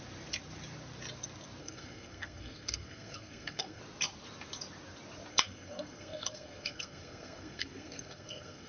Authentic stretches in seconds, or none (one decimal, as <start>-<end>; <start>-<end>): 0.0-1.6; 3.8-5.3